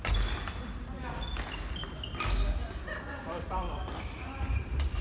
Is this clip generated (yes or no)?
no